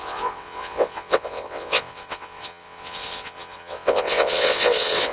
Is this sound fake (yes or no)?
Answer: yes